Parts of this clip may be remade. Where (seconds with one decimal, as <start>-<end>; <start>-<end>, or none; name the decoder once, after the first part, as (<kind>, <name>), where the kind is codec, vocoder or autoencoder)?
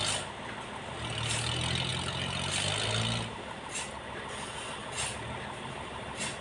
none